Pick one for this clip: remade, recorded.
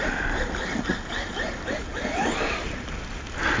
recorded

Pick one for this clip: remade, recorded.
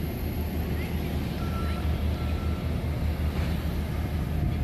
recorded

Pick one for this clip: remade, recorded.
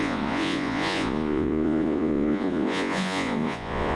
remade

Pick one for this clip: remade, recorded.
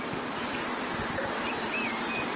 recorded